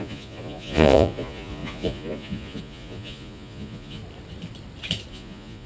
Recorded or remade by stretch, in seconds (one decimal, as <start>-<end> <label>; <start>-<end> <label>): 0.0-4.0 remade; 4.0-5.1 recorded; 5.1-5.7 remade